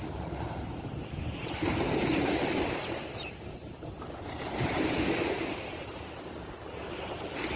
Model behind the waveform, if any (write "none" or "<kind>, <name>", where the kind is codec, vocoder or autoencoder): vocoder, BigVGAN v2